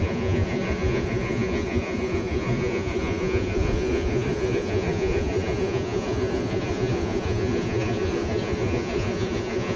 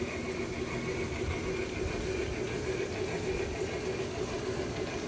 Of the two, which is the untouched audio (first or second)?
second